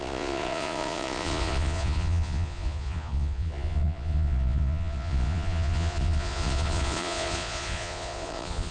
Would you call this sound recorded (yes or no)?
no